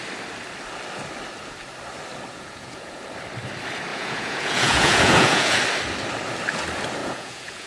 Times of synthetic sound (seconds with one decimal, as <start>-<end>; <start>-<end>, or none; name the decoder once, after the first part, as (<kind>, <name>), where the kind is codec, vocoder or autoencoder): 2.3-3.0 (vocoder, Vocos); 3.9-5.6; 7.0-7.7